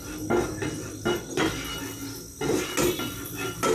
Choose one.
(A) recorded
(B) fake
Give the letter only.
A